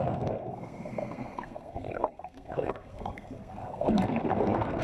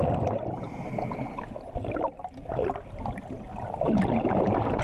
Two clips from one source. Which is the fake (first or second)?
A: first